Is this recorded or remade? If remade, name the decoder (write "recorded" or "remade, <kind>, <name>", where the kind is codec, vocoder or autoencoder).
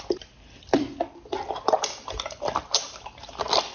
recorded